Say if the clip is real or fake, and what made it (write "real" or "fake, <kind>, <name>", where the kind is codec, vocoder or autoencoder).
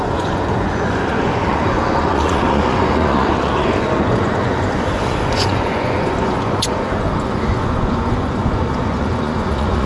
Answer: fake, vocoder, Vocos